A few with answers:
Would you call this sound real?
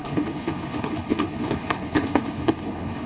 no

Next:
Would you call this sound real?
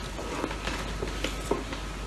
yes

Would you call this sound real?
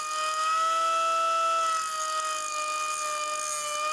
yes